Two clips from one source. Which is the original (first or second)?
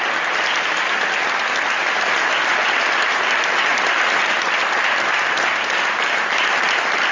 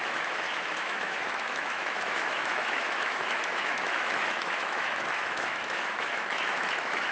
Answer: first